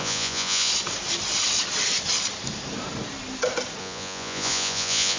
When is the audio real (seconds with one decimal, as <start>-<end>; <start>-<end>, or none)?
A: 0.7-3.8